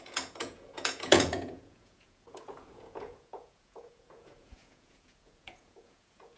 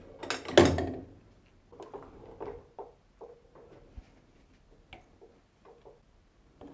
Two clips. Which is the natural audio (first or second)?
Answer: second